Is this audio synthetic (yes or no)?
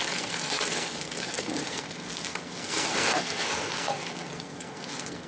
yes